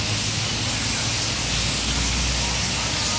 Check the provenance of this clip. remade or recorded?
recorded